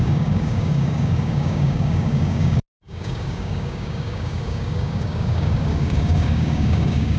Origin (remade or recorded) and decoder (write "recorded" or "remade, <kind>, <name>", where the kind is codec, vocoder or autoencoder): remade, codec, DAC